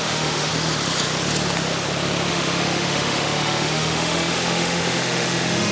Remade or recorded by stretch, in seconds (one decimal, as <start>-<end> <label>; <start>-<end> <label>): 0.0-0.5 remade; 0.5-2.3 recorded; 2.3-5.7 remade